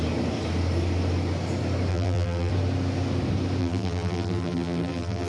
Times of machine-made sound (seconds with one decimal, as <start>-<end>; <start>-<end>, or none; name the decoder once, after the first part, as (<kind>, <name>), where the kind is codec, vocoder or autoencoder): 1.9-2.5 (vocoder, BigVGAN v2); 3.6-5.3